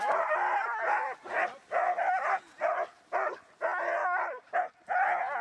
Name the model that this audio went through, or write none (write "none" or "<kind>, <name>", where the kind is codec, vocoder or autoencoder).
none